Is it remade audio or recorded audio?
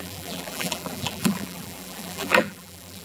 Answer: remade